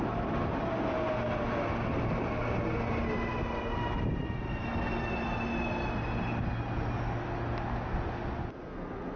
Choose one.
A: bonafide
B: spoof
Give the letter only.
A